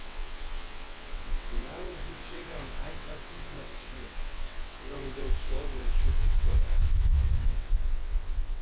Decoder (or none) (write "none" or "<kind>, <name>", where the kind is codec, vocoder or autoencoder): vocoder, WaveNeXt